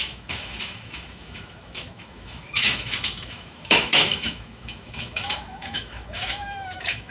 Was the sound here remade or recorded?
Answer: remade